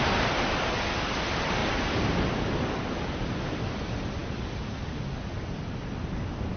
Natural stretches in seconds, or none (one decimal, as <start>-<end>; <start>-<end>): 0.0-1.6; 2.3-6.6